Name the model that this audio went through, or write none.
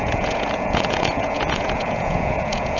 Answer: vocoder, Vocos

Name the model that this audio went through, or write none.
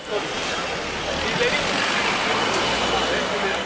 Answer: none